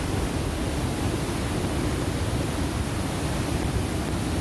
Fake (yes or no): no